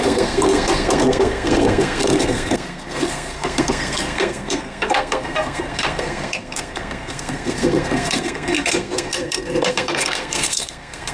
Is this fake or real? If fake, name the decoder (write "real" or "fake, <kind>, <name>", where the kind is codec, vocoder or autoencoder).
fake, codec, SNAC